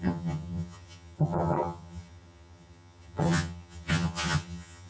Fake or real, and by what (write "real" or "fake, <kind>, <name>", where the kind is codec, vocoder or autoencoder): fake, vocoder, HiFi-GAN